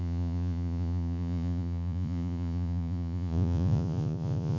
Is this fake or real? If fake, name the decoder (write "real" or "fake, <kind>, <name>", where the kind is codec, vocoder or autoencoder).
fake, vocoder, Vocos